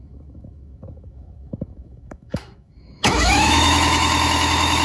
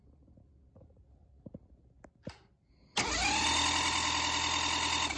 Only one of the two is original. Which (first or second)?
second